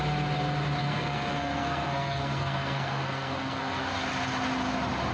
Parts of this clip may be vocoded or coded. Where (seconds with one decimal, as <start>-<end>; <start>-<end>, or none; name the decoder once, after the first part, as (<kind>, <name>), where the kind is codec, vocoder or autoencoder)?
0.8-3.9 (codec, SNAC)